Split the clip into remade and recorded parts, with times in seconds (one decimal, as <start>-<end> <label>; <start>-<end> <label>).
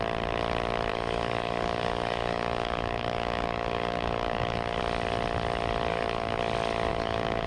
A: 0.0-0.9 recorded; 0.9-4.8 remade; 4.8-5.9 recorded; 5.9-6.4 remade; 6.4-6.9 recorded; 6.9-7.5 remade